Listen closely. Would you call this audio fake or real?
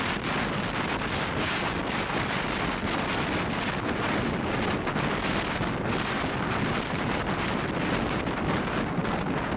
real